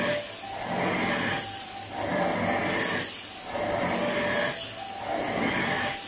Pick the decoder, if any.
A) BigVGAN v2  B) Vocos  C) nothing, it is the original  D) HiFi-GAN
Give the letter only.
C